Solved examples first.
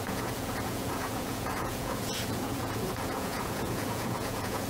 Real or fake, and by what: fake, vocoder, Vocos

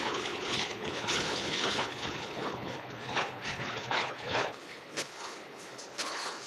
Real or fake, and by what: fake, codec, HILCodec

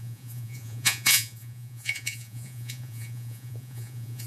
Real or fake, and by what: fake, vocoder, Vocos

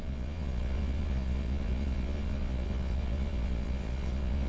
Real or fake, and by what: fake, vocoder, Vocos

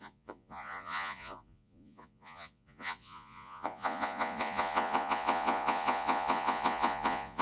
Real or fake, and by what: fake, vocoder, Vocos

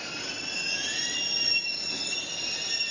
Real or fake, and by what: real